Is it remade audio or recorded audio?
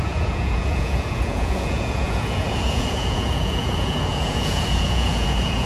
remade